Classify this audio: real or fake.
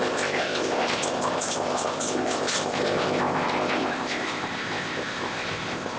fake